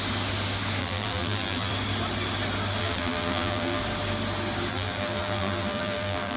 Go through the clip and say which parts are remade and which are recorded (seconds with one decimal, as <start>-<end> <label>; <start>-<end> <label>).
0.0-0.8 recorded; 0.8-1.7 remade; 1.7-2.8 recorded; 2.8-3.8 remade; 3.8-4.7 recorded; 4.7-6.4 remade